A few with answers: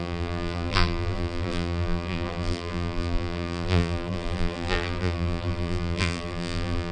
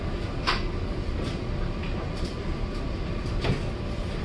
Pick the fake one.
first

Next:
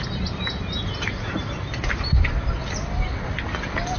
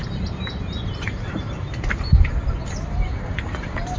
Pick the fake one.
second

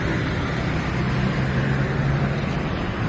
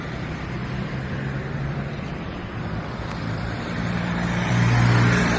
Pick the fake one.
second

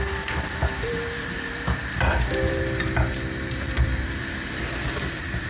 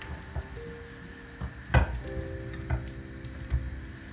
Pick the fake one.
first